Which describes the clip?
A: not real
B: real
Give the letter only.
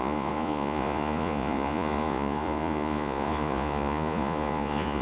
A